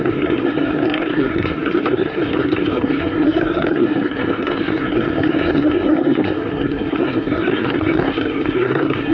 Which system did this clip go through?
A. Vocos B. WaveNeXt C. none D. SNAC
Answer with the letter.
D